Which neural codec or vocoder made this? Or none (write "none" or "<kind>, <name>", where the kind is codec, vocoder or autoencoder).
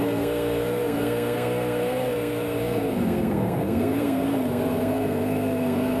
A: codec, SNAC